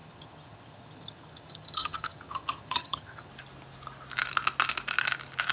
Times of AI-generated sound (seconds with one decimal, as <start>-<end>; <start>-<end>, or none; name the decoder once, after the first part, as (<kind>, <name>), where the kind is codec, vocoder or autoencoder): 0.0-3.3 (vocoder, HiFi-GAN)